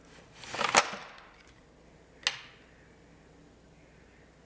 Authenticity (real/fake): real